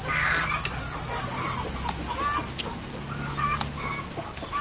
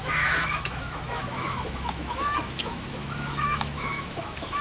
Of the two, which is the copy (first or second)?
second